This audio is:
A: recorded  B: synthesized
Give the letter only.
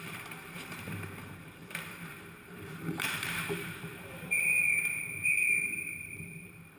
B